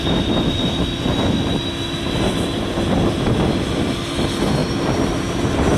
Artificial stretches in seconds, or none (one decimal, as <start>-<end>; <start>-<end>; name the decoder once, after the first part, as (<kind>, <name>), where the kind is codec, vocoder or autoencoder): none